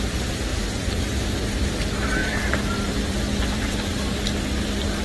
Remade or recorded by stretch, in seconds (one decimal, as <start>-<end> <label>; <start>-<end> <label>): 0.0-2.2 recorded; 2.2-3.7 remade; 3.7-5.0 recorded